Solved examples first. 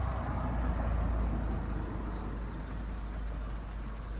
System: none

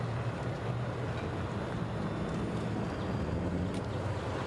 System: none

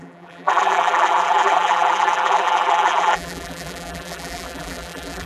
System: vocoder, BigVGAN v2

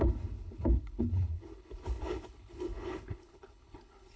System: codec, HILCodec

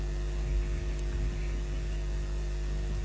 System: none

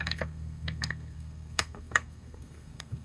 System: codec, SNAC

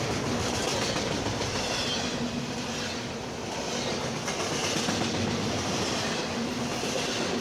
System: none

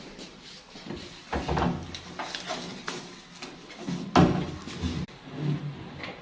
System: none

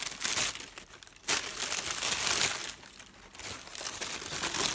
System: none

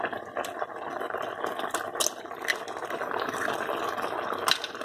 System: none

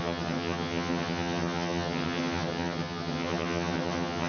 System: vocoder, HiFi-GAN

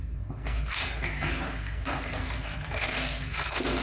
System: codec, SNAC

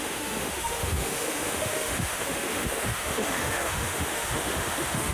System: autoencoder, DAC-VAE